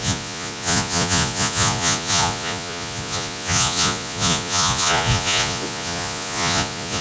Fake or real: fake